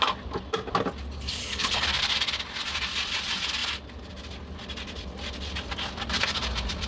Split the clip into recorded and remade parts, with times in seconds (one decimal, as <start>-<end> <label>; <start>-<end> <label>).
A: 0.0-1.4 recorded; 1.4-2.0 remade; 2.0-6.9 recorded